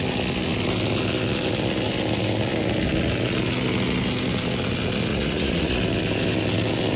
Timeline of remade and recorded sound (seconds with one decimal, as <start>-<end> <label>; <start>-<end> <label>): 0.0-5.1 recorded; 5.1-5.8 remade; 5.8-7.0 recorded